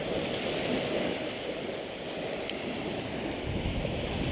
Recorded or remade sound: remade